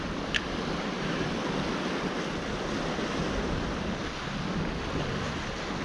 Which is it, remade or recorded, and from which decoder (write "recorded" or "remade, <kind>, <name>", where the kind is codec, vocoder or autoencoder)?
recorded